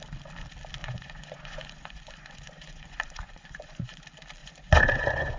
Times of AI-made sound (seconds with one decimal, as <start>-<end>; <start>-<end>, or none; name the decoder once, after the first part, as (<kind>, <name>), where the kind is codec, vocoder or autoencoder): 0.8-4.0 (vocoder, Vocos); 4.4-5.4